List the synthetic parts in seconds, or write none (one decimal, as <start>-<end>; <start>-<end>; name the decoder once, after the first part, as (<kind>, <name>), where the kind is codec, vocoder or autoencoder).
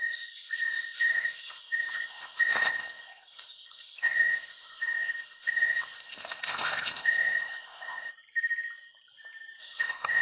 0.0-8.1 (codec, ZipCodec); 9.6-10.2